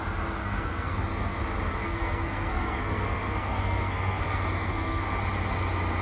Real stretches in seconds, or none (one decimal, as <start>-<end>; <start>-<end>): 0.0-0.4; 1.4-1.8; 5.1-6.0